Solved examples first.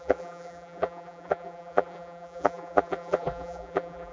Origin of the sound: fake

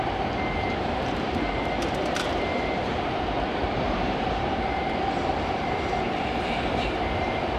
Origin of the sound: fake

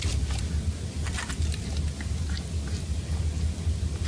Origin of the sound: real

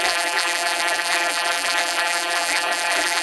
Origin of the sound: fake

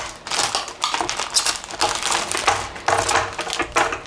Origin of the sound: real